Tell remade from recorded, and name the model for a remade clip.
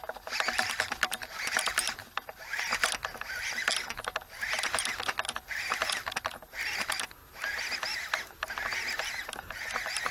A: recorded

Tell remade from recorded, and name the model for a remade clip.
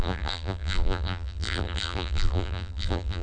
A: remade, vocoder, BigVGAN v2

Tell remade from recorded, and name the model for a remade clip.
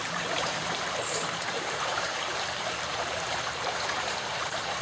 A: remade, vocoder, BigVGAN v2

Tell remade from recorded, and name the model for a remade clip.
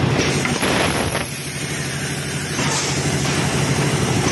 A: remade, vocoder, BigVGAN v2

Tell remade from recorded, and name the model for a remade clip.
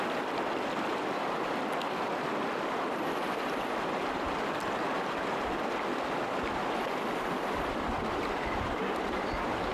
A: recorded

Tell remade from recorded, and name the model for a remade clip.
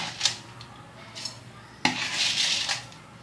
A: recorded